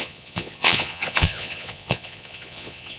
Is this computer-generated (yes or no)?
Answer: yes